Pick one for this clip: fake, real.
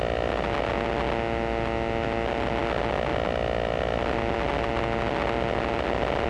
real